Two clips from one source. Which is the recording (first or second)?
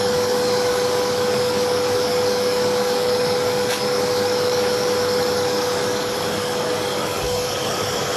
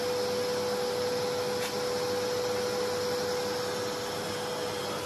second